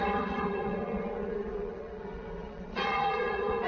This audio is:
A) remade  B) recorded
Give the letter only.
A